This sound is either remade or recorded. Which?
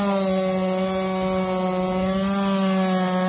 recorded